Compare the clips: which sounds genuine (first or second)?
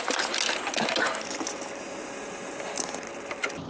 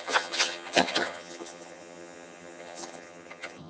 first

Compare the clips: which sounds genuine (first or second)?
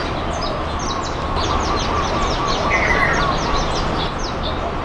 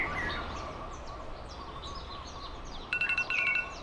first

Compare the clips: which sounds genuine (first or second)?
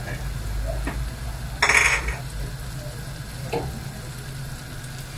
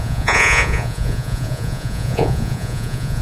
first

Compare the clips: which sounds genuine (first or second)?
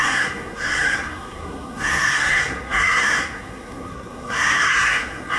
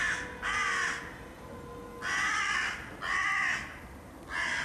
second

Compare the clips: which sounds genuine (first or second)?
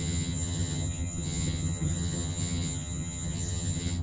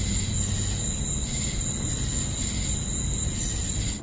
second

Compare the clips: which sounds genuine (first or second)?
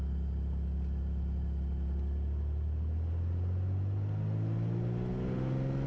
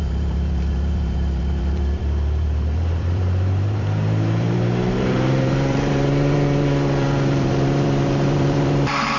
first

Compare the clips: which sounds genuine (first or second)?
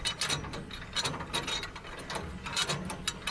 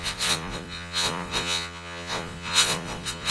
first